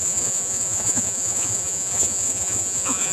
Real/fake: fake